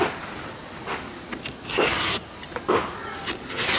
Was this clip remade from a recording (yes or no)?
no